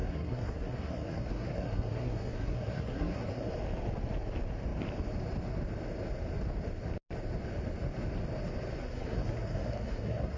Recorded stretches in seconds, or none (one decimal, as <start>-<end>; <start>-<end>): 3.5-8.8